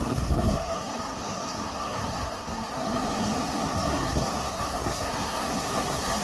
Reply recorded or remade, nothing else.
remade